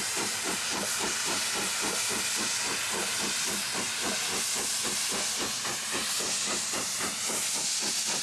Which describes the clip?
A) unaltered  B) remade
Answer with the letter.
A